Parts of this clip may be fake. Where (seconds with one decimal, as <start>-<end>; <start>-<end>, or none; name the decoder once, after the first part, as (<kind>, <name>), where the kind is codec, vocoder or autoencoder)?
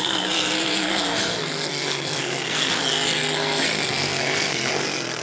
0.0-5.2 (codec, SNAC)